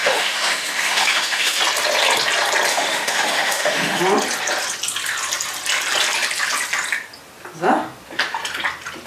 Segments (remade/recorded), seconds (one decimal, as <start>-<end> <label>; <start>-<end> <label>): 0.0-1.6 remade; 1.6-2.7 recorded; 2.7-4.0 remade; 4.0-9.1 recorded